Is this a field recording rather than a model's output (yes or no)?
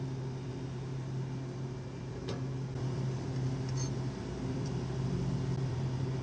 no